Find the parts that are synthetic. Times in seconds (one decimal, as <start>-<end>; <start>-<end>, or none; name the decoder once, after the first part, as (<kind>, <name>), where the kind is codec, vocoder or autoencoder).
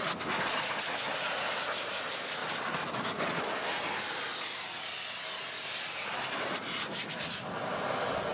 none